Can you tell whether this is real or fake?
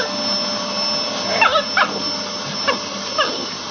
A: real